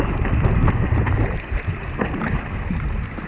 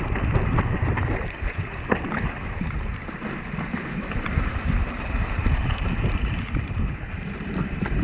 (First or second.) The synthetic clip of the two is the second